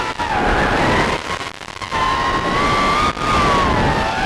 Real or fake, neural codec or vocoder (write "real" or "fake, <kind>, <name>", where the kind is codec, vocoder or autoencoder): real